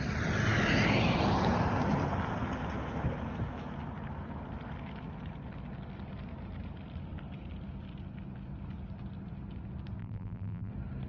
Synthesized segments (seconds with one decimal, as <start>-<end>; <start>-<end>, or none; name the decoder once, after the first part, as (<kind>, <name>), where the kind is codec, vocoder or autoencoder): 10.0-10.7 (vocoder, BigVGAN v2)